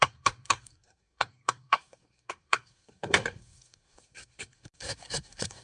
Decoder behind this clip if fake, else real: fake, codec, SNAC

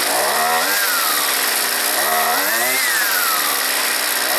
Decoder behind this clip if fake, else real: real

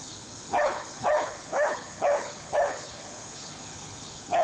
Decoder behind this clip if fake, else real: fake, codec, HILCodec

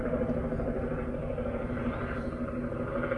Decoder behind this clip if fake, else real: real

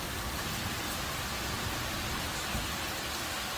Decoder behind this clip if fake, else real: real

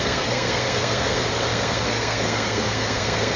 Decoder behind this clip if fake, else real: fake, codec, SNAC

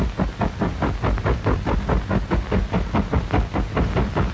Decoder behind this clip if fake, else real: real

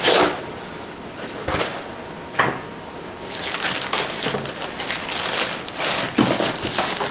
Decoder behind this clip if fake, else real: real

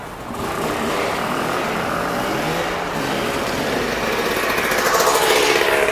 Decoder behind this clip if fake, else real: real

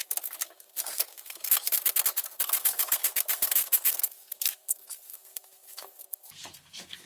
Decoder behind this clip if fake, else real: fake, codec, SNAC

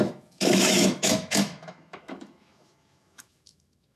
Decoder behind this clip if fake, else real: fake, autoencoder, DAC-VAE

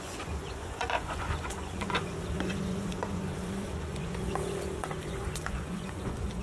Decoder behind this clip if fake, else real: fake, vocoder, Vocos